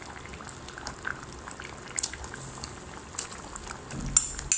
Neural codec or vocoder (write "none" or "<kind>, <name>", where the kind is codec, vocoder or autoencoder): none